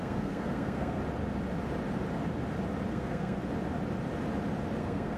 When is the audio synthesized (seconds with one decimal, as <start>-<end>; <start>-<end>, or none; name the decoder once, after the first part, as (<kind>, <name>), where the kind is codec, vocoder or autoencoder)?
0.0-1.0 (codec, SNAC); 2.9-3.4; 4.8-5.2